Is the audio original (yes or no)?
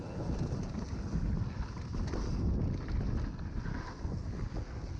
yes